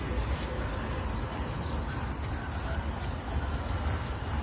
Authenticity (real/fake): real